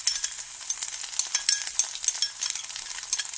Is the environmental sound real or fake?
real